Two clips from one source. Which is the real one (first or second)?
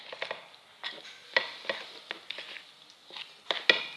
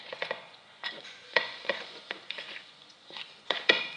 first